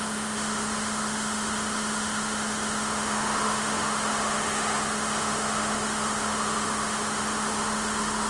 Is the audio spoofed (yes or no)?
yes